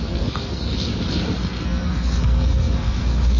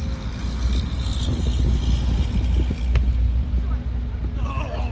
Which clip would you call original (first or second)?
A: second